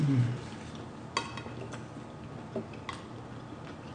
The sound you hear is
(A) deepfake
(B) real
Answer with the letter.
B